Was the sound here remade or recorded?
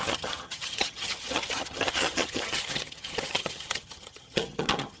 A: remade